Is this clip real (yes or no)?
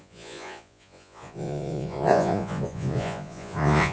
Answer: no